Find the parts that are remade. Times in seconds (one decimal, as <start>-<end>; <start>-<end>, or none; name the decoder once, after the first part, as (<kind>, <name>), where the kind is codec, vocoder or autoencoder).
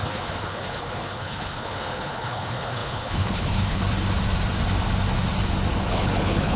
0.0-3.8 (codec, HILCodec); 5.9-6.6